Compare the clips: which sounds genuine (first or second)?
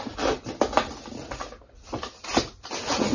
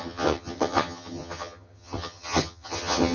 first